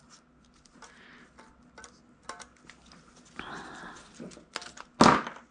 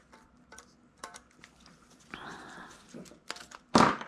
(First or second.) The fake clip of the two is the second